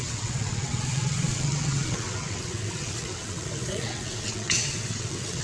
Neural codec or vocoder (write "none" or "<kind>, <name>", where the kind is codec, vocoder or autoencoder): vocoder, WaveNeXt